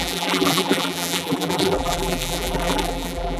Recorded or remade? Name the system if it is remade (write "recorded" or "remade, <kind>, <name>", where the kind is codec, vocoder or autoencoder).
remade, vocoder, BigVGAN v2